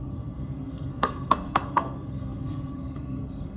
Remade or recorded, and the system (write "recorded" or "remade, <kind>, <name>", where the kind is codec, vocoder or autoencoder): remade, codec, SNAC